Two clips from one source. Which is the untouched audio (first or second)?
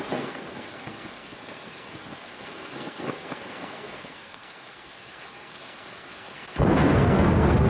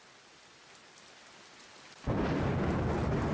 second